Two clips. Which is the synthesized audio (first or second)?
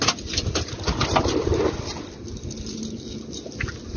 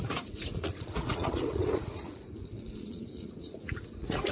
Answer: second